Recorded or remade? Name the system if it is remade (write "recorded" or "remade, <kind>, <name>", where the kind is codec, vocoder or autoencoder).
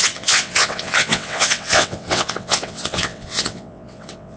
remade, vocoder, WaveNeXt